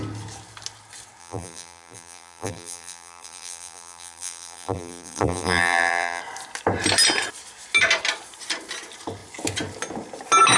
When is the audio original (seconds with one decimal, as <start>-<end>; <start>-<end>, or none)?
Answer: 0.0-1.2; 6.2-10.6